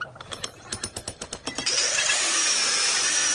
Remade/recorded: recorded